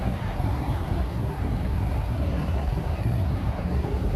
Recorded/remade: remade